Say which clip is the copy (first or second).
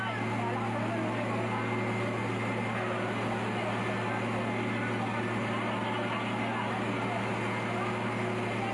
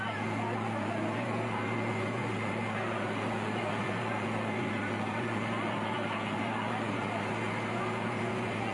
second